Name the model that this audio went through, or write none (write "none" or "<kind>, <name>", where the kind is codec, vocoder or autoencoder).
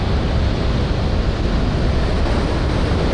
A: none